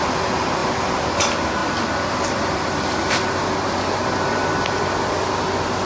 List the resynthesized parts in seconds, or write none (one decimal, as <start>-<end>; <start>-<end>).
0.6-1.2; 1.6-5.1